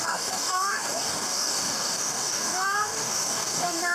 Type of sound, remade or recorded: remade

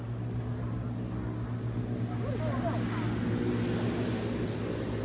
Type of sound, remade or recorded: recorded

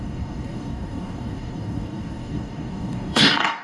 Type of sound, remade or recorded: remade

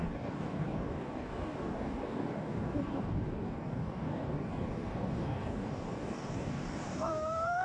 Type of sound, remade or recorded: remade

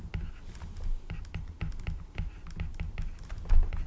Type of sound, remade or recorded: recorded